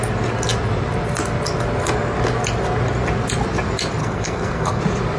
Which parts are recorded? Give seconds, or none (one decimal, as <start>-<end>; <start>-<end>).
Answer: 0.0-4.0; 4.8-5.2